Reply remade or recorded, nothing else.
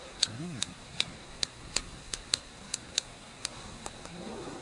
remade